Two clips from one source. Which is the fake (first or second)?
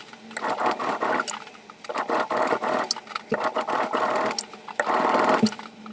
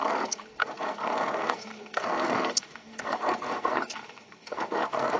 second